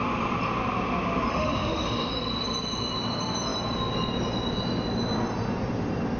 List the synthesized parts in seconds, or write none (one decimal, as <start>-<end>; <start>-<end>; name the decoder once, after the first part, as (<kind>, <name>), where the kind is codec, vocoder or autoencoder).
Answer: 1.3-2.1 (autoencoder, DAC-VAE)